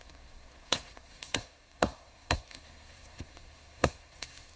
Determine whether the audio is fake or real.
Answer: fake